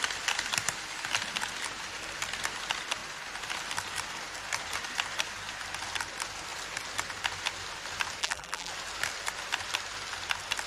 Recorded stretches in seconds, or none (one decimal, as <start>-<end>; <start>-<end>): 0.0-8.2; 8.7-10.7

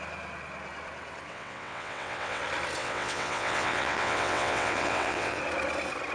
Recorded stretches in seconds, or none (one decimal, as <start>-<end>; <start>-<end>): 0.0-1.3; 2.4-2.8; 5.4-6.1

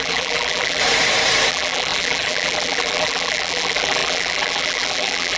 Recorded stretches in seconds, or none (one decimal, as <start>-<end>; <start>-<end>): 0.8-1.5

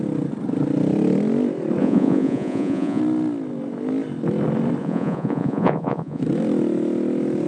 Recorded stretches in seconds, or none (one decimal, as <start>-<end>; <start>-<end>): 0.0-1.8; 3.0-4.8; 6.2-7.5

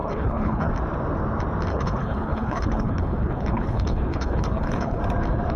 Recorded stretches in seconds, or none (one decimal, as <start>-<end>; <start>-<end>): 0.7-1.7; 5.0-5.6

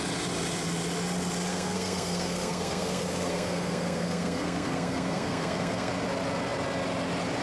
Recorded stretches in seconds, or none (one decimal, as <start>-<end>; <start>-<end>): 0.0-1.5; 5.9-7.4

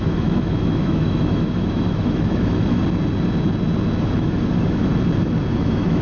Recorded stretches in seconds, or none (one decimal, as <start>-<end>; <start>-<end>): 2.8-4.0; 4.9-5.6

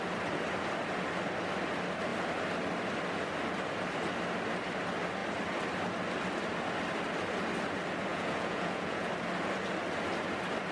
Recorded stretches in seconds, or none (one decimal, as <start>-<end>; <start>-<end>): 0.0-8.1; 9.1-10.7